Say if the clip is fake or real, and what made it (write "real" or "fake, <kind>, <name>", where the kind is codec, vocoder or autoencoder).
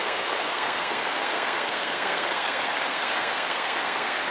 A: fake, codec, SNAC